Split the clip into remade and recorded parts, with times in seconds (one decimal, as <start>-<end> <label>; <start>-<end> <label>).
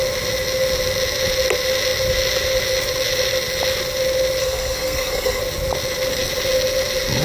0.0-4.4 recorded; 4.4-5.4 remade; 5.4-7.2 recorded